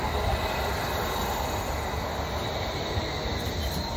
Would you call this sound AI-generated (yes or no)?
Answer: no